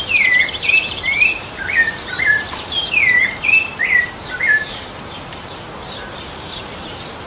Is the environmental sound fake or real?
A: fake